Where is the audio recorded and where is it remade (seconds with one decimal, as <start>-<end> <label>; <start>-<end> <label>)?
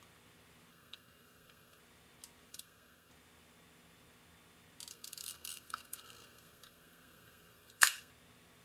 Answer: 0.0-0.7 recorded; 0.7-1.8 remade; 1.8-2.5 recorded; 2.5-3.1 remade; 3.1-4.9 recorded; 4.9-8.1 remade; 8.1-8.6 recorded